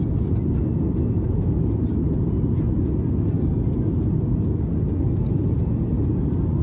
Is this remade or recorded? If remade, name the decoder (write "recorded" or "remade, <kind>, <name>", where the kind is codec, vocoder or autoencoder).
recorded